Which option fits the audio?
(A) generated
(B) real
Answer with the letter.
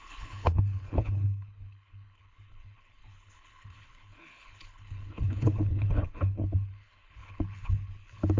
A